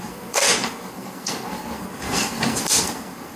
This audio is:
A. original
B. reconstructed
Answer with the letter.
B